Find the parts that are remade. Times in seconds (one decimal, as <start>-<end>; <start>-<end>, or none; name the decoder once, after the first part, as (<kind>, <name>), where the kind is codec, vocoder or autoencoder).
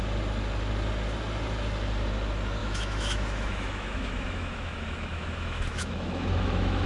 2.6-6.9 (autoencoder, DAC-VAE)